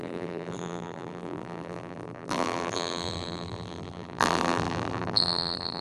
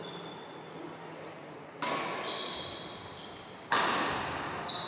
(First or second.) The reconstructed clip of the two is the first